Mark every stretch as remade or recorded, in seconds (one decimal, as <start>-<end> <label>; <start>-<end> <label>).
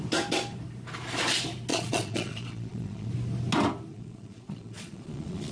0.0-1.7 recorded; 1.7-3.1 remade; 3.1-3.9 recorded; 3.9-5.5 remade